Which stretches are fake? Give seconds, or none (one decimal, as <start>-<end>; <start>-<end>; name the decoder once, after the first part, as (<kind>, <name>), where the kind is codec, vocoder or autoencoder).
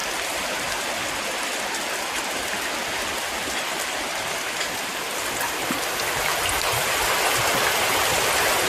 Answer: 4.6-6.3 (vocoder, BigVGAN v2); 7.9-8.7